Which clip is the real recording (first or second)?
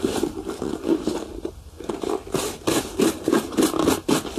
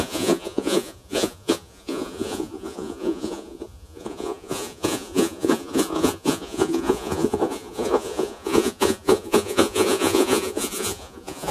first